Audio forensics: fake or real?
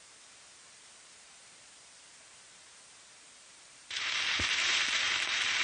fake